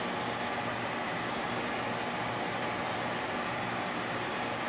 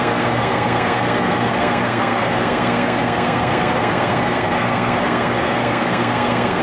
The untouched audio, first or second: first